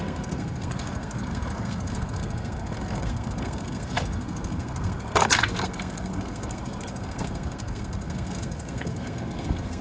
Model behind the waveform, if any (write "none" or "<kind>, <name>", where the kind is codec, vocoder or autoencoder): codec, SNAC